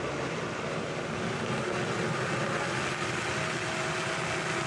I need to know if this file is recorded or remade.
recorded